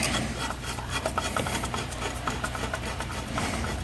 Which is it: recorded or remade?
remade